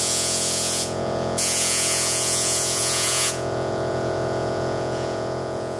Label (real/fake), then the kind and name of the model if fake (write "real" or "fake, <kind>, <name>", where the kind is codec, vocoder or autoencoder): fake, vocoder, Vocos